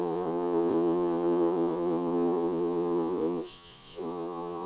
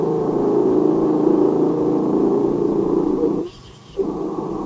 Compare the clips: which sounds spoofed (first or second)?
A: first